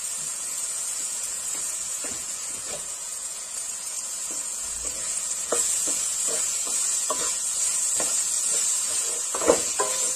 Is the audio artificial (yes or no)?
yes